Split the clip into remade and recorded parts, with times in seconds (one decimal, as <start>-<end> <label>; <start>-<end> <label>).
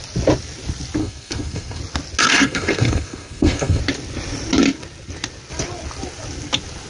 0.0-1.0 recorded; 1.0-1.8 remade; 1.8-2.2 recorded; 2.2-3.8 remade; 3.8-6.9 recorded